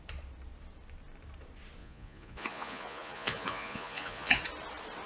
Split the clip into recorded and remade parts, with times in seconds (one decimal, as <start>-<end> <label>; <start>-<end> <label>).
0.0-1.8 recorded; 1.8-4.4 remade; 4.4-5.1 recorded